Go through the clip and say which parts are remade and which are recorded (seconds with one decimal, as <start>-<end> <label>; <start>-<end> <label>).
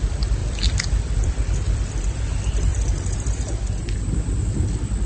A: 0.0-0.4 remade; 0.4-1.0 recorded; 1.0-2.7 remade; 2.7-3.7 recorded; 3.7-5.1 remade